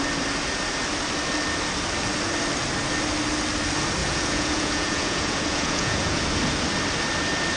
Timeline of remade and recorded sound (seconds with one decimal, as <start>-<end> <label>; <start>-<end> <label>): 0.0-4.0 recorded; 4.0-6.2 remade; 6.2-7.6 recorded